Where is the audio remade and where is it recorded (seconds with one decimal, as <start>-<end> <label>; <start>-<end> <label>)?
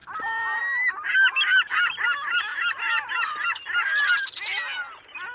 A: 0.0-5.3 recorded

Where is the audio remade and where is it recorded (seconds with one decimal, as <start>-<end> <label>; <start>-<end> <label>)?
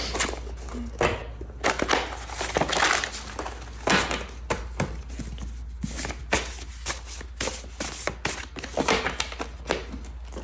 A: 0.0-10.4 recorded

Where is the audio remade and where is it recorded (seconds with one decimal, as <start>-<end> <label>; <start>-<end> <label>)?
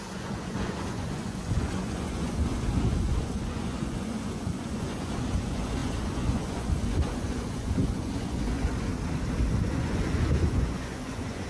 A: 0.0-8.9 remade; 8.9-9.6 recorded; 9.6-11.5 remade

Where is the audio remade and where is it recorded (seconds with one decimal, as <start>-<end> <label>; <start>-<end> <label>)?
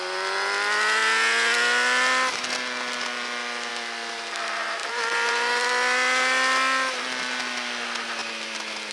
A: 0.0-4.8 recorded; 4.8-5.6 remade; 5.6-8.9 recorded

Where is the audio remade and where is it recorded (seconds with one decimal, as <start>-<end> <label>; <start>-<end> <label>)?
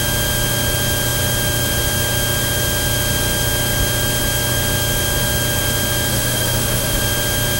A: 0.0-6.1 recorded; 6.1-7.0 remade; 7.0-7.6 recorded